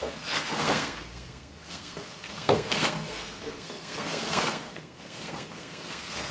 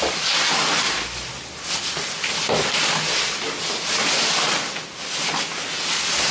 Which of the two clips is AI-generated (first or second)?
first